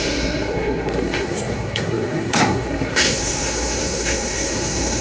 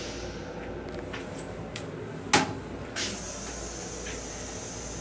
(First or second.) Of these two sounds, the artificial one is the first